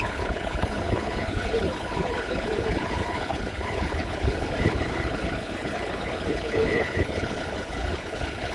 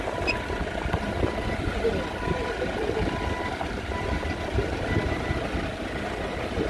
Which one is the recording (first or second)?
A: second